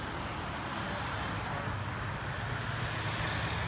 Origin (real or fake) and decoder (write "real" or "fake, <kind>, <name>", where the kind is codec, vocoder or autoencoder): real